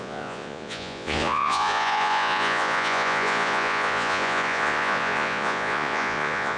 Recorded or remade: remade